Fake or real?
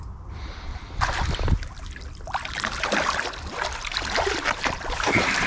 fake